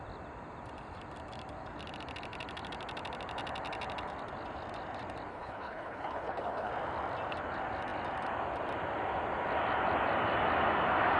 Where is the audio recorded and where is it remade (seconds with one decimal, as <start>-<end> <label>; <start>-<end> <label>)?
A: 0.0-5.3 recorded; 5.3-6.7 remade; 6.7-11.2 recorded